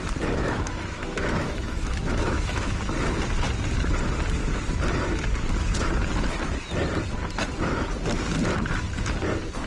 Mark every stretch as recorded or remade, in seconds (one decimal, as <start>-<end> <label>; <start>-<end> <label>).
0.0-0.4 recorded; 0.4-2.8 remade; 2.8-9.7 recorded